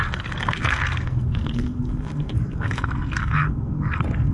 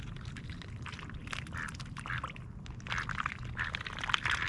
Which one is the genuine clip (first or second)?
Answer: second